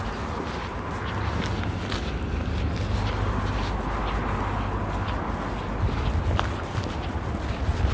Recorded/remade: recorded